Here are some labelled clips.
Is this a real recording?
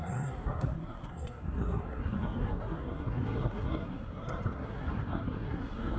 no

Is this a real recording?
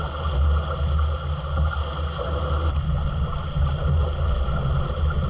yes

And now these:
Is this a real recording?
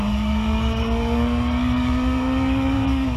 no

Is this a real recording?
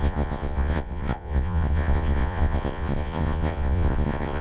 no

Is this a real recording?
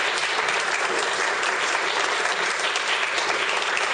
no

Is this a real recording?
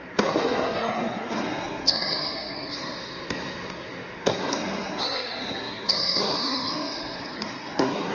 no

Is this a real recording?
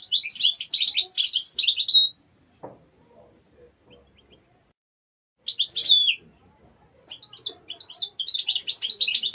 yes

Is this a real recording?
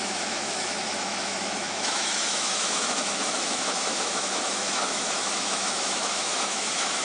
no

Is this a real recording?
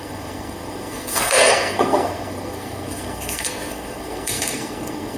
no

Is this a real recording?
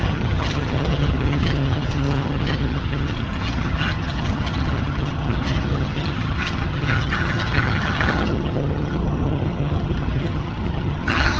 no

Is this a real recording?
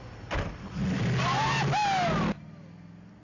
yes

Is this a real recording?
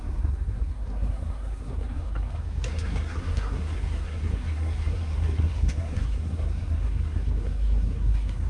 no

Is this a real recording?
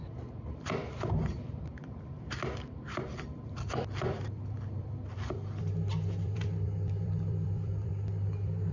no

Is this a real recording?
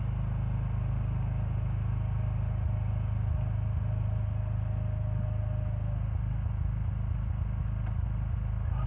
yes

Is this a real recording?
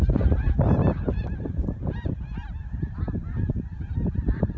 no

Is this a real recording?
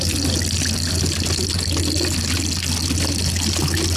yes